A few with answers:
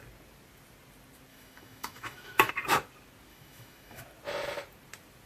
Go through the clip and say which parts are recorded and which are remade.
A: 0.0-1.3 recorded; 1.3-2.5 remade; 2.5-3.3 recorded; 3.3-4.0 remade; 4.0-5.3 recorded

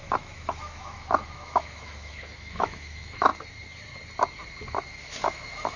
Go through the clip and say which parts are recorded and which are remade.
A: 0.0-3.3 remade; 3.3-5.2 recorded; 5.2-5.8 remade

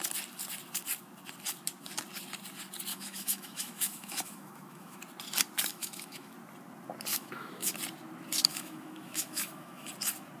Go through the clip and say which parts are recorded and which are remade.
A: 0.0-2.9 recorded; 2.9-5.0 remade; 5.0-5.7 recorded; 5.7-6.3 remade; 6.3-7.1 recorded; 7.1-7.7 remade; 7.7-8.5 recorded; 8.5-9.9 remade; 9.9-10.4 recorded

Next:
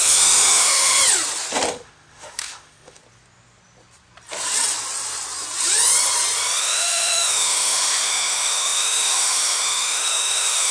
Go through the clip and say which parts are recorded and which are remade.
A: 0.0-1.0 remade; 1.0-1.7 recorded; 1.7-3.0 remade; 3.0-6.6 recorded; 6.6-10.7 remade

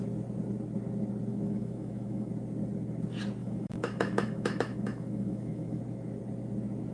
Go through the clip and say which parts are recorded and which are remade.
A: 0.0-1.3 recorded; 1.3-2.3 remade; 2.3-3.4 recorded; 3.4-5.8 remade; 5.8-6.9 recorded